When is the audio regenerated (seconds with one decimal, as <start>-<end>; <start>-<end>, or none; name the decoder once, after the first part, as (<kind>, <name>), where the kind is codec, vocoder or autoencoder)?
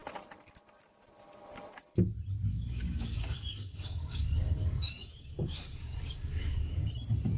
2.5-6.9 (codec, DAC)